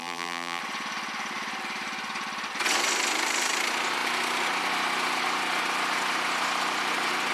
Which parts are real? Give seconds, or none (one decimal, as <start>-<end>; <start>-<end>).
0.6-7.3